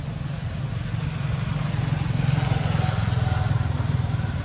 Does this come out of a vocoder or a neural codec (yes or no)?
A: no